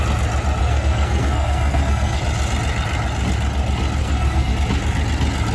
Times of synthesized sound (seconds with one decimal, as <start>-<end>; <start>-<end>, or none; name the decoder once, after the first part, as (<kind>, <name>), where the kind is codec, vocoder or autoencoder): 0.6-2.2 (codec, SNAC); 4.0-4.5

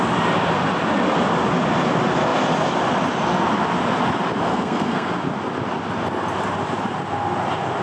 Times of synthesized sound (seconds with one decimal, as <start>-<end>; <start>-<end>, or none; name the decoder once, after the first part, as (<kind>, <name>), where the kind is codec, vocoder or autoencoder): 4.5-5.1 (codec, SNAC)

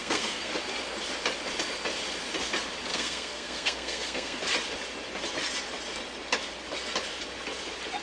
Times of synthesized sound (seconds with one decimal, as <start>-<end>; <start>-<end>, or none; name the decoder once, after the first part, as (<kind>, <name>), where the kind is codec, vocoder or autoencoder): 0.0-0.5 (codec, SNAC); 2.9-4.4

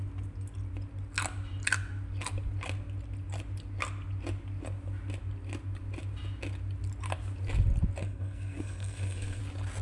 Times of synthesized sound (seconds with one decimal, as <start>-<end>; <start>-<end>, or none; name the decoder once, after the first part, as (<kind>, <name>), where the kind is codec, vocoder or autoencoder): 8.0-9.4 (codec, SNAC)

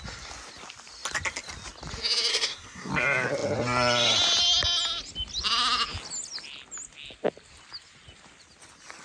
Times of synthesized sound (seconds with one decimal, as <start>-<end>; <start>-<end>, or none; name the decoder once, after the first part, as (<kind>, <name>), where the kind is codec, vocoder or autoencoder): 2.3-2.9 (codec, SNAC)

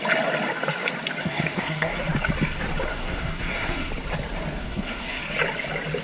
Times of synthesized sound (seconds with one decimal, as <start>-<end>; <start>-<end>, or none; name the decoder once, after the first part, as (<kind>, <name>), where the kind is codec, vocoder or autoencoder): 1.2-2.0 (codec, SNAC); 2.9-3.9; 4.6-5.2

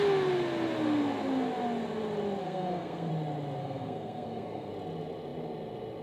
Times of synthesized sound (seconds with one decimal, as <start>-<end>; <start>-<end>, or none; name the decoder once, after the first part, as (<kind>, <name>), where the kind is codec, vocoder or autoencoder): 2.4-3.1 (codec, SNAC); 3.6-4.7